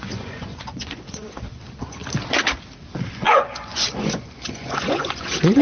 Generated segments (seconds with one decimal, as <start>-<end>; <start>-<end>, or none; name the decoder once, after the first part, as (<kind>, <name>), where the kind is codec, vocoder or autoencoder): 0.0-2.0 (vocoder, Vocos); 3.1-5.6